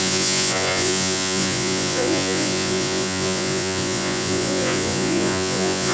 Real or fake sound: fake